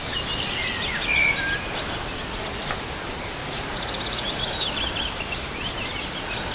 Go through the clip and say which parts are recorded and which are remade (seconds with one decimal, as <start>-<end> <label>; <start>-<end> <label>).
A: 0.0-3.4 recorded; 3.4-4.4 remade; 4.4-6.5 recorded

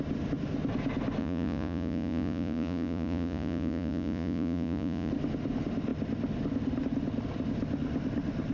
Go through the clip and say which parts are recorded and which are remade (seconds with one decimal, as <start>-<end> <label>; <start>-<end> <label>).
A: 0.0-1.2 recorded; 1.2-5.1 remade; 5.1-8.5 recorded

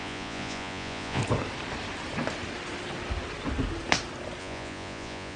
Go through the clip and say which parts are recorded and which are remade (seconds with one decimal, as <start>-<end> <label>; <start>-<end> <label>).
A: 0.0-1.2 remade; 1.2-4.4 recorded; 4.4-5.4 remade